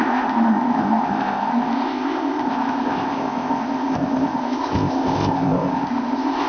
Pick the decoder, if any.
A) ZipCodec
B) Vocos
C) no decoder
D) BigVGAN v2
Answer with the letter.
A